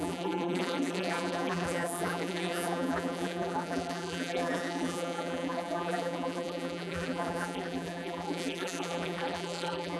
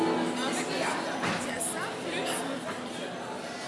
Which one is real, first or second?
second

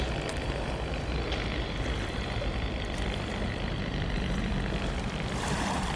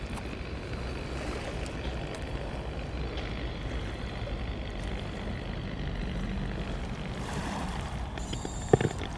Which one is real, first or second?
second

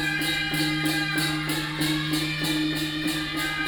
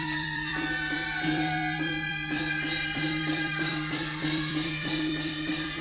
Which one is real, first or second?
first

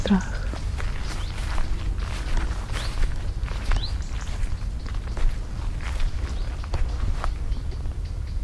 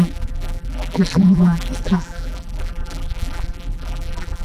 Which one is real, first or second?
first